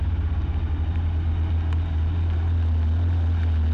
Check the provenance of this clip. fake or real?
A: real